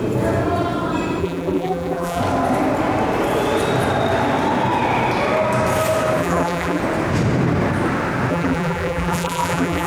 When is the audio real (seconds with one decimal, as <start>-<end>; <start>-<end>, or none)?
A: 0.0-1.2; 2.2-6.2; 6.8-8.3